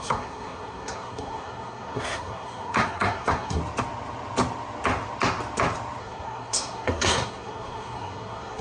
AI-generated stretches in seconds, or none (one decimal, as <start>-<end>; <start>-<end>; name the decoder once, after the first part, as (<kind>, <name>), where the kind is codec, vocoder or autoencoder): 0.0-3.6 (codec, SNAC); 6.0-8.6